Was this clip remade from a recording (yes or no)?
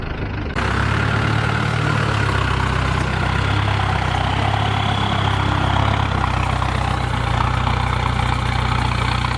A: no